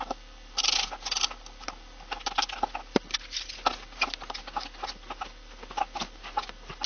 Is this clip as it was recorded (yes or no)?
yes